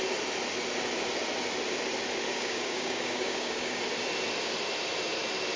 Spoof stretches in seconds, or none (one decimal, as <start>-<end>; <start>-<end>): 2.3-3.8